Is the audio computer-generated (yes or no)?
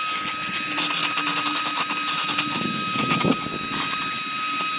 no